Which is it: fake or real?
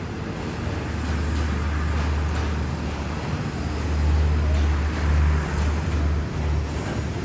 real